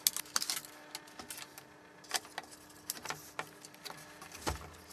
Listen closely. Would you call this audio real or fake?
real